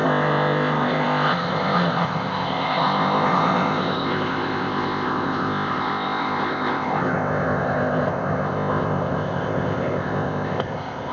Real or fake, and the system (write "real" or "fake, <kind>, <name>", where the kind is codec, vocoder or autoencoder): fake, codec, ZipCodec